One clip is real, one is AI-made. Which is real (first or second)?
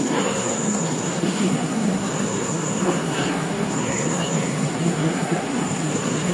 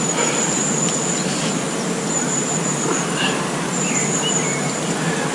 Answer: second